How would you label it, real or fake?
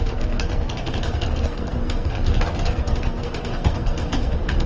fake